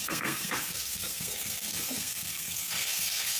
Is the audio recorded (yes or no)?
no